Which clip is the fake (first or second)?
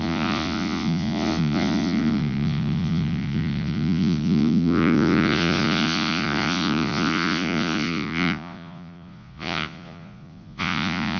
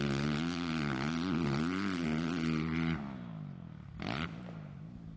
first